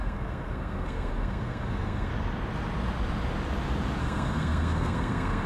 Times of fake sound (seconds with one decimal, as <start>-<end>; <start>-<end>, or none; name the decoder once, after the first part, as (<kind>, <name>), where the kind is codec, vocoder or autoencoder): 0.0-2.1 (codec, SNAC); 4.0-5.5